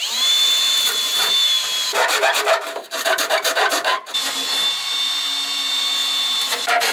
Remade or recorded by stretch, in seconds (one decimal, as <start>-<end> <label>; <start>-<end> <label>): 0.0-6.9 remade